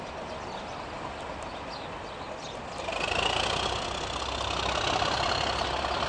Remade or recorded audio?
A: recorded